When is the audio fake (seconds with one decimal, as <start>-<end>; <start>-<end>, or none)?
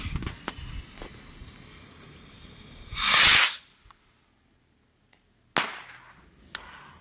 none